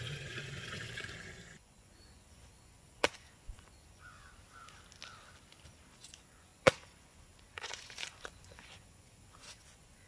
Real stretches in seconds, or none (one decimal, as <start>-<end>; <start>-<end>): 4.3-5.9